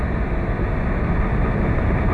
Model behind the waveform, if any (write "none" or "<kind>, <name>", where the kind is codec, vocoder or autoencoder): none